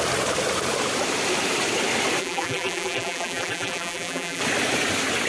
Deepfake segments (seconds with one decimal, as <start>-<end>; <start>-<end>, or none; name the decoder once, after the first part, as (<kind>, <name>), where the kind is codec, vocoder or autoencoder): 2.2-4.4 (vocoder, BigVGAN v2)